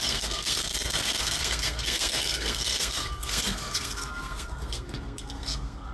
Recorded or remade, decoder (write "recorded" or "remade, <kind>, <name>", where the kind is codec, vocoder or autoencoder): remade, codec, SNAC